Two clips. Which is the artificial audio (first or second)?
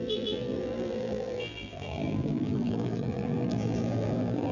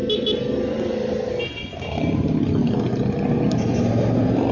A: first